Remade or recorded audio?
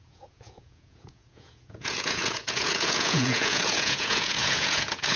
remade